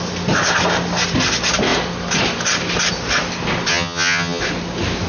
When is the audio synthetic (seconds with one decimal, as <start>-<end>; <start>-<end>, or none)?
3.7-4.4